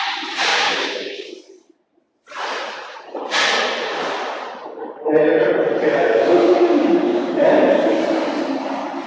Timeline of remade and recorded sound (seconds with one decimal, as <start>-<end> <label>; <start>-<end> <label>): 0.0-0.5 recorded; 0.5-1.3 remade; 1.3-6.0 recorded; 6.0-8.0 remade; 8.0-9.1 recorded